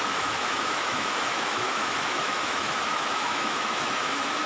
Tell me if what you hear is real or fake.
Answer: fake